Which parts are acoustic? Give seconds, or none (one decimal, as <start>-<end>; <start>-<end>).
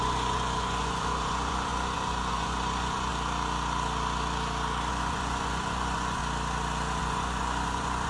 3.1-4.9; 6.2-7.0